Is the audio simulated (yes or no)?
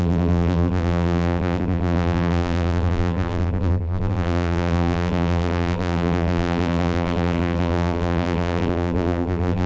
yes